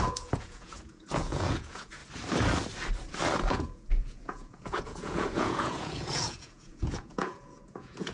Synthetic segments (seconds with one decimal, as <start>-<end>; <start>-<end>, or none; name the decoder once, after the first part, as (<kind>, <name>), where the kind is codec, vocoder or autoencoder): 0.0-2.0 (vocoder, Vocos); 3.5-8.1